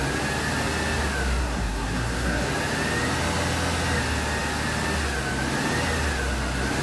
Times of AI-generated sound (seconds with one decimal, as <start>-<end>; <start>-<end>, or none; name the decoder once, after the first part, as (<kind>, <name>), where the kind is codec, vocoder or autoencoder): 1.4-2.5 (codec, SNAC)